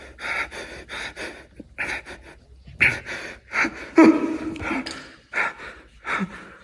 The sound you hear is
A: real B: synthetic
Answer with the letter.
A